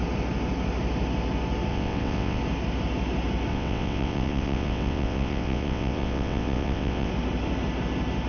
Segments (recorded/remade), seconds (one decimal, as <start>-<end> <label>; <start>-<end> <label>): 0.0-1.7 recorded; 1.7-2.4 remade; 2.4-3.5 recorded; 3.5-7.1 remade; 7.1-8.3 recorded